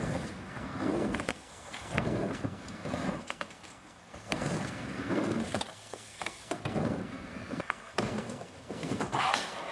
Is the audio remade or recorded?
remade